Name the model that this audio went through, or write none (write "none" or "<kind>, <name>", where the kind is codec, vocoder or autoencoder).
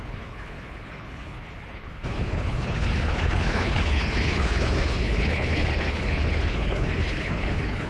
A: codec, HILCodec